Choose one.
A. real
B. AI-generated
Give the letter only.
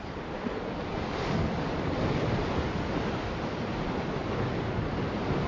A